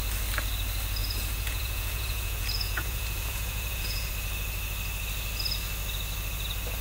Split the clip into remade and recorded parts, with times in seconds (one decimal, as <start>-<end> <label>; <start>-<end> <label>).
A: 0.0-1.0 recorded; 1.0-4.1 remade; 4.1-6.8 recorded

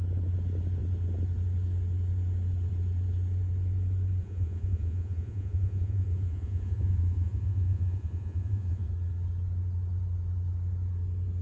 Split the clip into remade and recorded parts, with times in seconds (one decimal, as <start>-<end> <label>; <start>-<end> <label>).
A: 0.0-4.2 recorded; 4.2-8.9 remade; 8.9-11.4 recorded